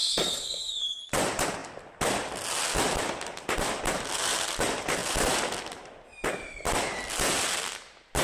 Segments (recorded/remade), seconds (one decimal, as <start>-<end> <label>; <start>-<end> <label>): 0.0-1.0 remade; 1.0-8.2 recorded